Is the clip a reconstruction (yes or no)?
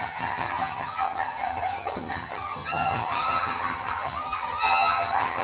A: yes